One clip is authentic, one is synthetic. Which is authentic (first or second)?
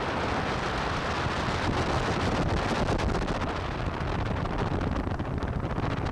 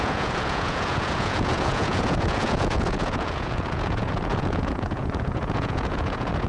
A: first